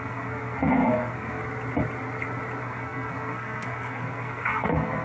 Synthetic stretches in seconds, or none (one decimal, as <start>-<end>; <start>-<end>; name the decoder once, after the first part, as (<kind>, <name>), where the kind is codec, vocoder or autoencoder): 0.0-1.4 (codec, SNAC); 2.6-5.0